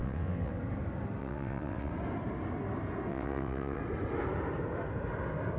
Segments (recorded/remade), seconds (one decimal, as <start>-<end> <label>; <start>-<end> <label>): 0.0-0.5 remade; 0.5-1.2 recorded; 1.2-1.9 remade; 1.9-3.1 recorded; 3.1-3.8 remade; 3.8-5.6 recorded

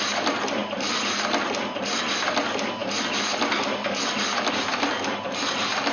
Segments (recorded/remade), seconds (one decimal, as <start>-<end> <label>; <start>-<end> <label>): 0.0-5.9 recorded